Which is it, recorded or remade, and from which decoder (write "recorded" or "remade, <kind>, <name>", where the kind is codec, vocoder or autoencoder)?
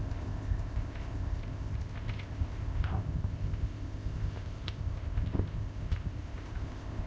remade, codec, ZipCodec